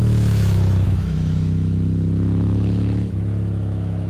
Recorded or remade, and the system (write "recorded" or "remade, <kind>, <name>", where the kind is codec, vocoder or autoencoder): remade, autoencoder, DAC-VAE